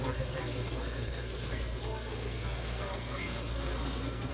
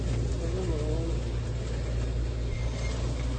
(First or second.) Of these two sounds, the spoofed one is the first